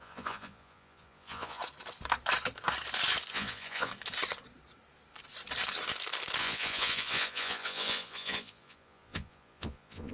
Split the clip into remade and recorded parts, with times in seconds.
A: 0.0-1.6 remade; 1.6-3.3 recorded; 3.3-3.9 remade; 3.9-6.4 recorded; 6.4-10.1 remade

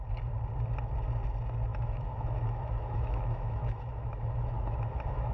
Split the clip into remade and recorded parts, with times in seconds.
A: 0.0-1.7 recorded; 1.7-5.3 remade

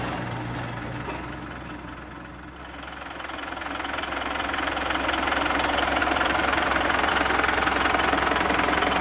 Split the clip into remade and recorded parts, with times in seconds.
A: 0.0-6.0 recorded; 6.0-7.1 remade; 7.1-9.0 recorded

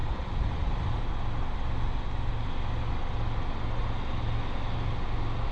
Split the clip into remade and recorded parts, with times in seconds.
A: 0.0-1.0 remade; 1.0-5.5 recorded

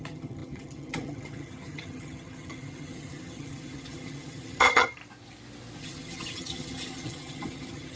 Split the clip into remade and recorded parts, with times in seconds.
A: 0.0-5.0 remade; 5.0-5.8 recorded; 5.8-8.0 remade

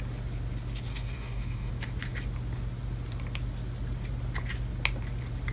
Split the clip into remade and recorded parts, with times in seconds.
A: 0.0-0.9 recorded; 0.9-1.7 remade; 1.7-5.5 recorded

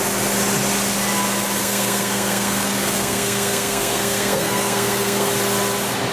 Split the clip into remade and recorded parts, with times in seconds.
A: 0.0-1.6 recorded; 1.6-5.3 remade; 5.3-6.1 recorded